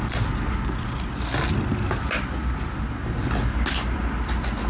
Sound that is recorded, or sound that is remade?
recorded